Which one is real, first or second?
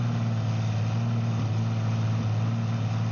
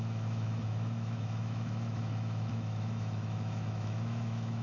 first